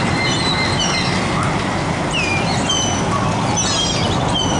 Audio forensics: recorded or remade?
recorded